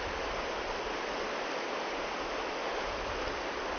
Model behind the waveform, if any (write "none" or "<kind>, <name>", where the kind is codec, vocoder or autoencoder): none